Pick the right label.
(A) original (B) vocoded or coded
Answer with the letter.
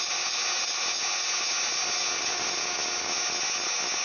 A